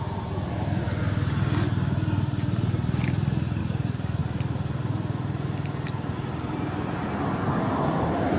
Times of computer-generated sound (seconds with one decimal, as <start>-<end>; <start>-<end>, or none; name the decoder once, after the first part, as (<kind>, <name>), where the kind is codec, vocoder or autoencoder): 3.6-4.2 (codec, DAC)